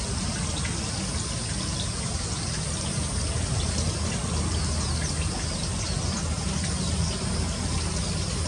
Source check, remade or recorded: recorded